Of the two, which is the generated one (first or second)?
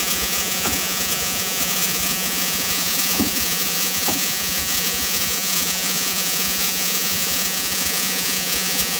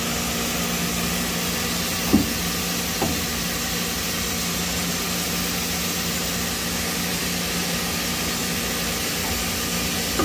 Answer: first